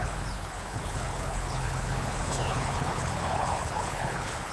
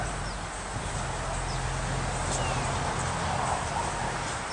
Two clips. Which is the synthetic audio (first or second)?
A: first